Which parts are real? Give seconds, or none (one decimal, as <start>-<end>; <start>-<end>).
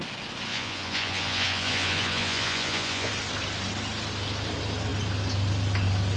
0.0-0.5; 3.1-6.2